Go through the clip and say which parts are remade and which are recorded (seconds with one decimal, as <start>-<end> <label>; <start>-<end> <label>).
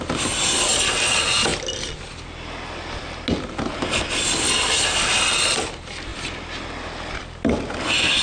0.0-8.2 recorded